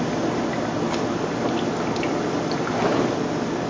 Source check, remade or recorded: recorded